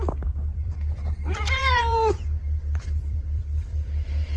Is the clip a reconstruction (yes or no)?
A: yes